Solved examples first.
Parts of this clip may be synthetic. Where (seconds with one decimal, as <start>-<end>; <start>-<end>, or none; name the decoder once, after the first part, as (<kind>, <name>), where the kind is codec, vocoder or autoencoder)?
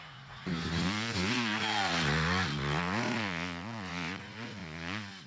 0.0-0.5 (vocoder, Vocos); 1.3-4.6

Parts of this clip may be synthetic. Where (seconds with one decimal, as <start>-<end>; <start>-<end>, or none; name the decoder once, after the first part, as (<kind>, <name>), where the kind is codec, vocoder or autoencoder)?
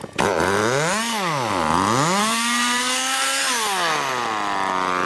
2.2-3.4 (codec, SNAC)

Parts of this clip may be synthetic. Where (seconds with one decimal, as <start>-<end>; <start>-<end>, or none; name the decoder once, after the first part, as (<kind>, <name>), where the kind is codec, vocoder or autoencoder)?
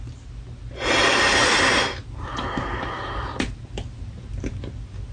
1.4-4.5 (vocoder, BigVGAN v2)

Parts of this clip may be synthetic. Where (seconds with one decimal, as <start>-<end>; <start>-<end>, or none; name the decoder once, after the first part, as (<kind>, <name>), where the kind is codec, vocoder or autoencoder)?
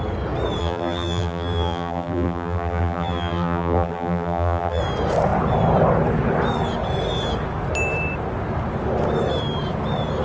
0.6-4.8 (vocoder, BigVGAN v2)